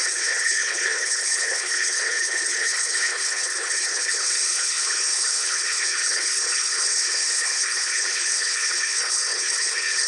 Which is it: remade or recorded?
remade